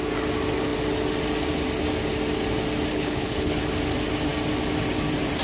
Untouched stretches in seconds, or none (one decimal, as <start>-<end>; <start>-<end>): 0.0-2.9; 3.6-5.4